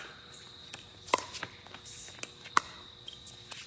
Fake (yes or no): no